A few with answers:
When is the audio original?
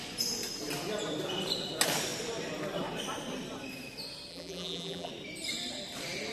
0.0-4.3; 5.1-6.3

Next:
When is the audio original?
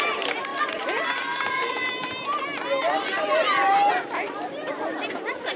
0.0-0.5; 1.8-5.6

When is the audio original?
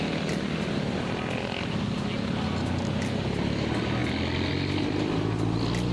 0.0-5.9